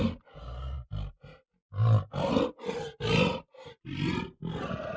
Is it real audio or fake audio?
real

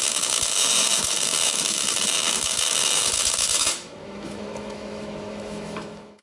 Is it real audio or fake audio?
fake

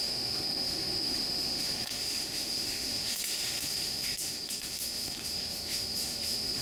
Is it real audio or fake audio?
fake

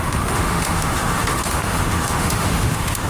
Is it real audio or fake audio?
fake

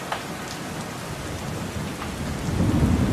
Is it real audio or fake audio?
real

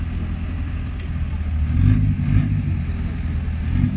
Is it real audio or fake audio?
real